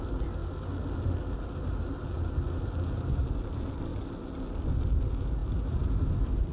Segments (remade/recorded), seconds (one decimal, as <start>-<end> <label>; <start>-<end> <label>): 0.0-6.5 recorded

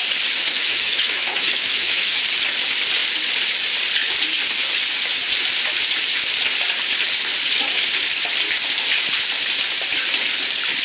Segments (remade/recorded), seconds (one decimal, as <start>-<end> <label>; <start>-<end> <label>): 0.0-0.4 recorded; 0.4-2.2 remade; 2.2-10.8 recorded

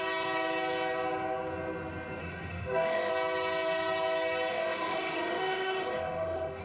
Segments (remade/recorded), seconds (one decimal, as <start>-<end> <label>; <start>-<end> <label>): 0.0-2.2 recorded; 2.2-3.1 remade; 3.1-4.5 recorded; 4.5-6.6 remade

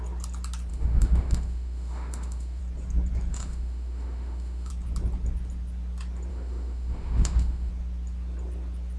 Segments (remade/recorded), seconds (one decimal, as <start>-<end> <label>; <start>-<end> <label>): 0.0-0.7 recorded; 0.7-2.6 remade; 2.6-3.3 recorded; 3.3-4.7 remade; 4.7-6.3 recorded; 6.3-7.7 remade; 7.7-9.0 recorded